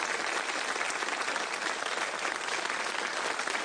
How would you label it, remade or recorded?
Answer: recorded